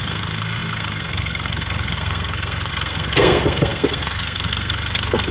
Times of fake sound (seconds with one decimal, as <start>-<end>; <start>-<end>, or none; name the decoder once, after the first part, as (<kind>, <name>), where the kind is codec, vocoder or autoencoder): 0.0-5.3 (codec, SNAC)